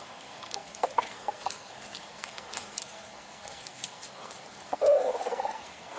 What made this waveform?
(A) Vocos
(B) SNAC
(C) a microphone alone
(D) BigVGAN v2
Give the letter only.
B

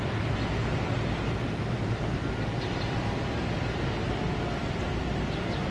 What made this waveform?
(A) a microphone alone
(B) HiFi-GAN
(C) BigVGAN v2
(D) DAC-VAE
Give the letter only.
A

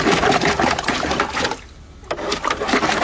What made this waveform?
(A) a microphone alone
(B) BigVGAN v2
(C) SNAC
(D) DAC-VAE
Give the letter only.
A